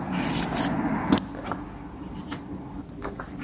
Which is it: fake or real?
real